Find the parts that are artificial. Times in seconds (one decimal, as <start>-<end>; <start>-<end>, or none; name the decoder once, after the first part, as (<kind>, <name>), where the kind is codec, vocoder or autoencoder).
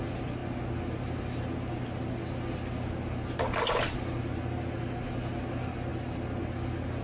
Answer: none